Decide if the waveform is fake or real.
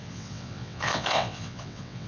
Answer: fake